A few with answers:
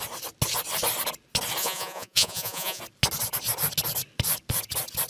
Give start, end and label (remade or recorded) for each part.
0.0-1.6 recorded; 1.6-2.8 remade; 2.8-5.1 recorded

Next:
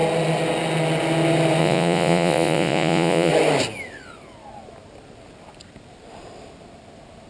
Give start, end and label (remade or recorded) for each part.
0.0-1.6 recorded; 1.6-3.3 remade; 3.3-7.3 recorded